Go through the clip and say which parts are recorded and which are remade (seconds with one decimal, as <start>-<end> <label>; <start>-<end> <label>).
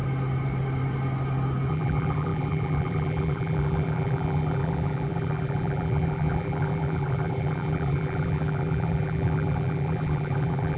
0.0-1.7 recorded; 1.7-10.8 remade